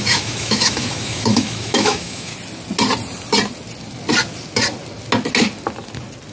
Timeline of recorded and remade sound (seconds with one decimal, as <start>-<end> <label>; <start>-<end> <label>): 0.0-2.3 remade; 2.3-6.3 recorded